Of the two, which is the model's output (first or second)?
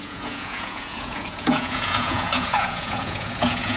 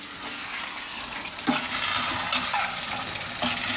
first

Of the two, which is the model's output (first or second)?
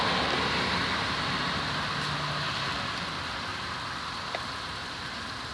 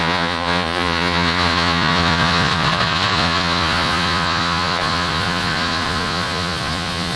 second